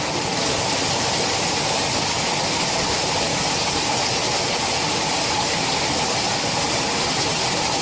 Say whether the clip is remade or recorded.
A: recorded